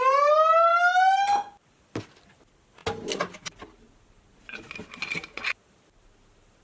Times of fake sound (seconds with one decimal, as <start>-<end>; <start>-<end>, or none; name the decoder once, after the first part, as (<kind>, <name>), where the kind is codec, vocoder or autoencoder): none